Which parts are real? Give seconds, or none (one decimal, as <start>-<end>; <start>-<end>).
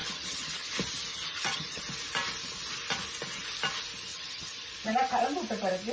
0.7-1.1; 1.8-4.1; 4.7-5.9